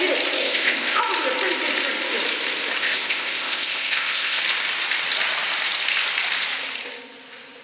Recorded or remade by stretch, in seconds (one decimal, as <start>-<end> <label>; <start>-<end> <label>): 0.0-0.4 recorded; 0.4-1.0 remade; 1.0-2.8 recorded; 2.8-4.4 remade; 4.4-7.6 recorded